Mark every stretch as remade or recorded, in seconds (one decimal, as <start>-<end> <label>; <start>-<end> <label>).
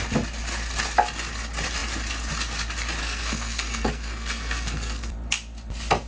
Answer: 0.0-3.0 recorded; 3.0-5.1 remade; 5.1-6.1 recorded